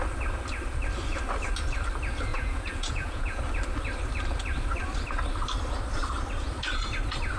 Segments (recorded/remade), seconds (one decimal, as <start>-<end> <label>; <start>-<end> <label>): 0.0-2.3 recorded; 2.3-3.4 remade; 3.4-7.4 recorded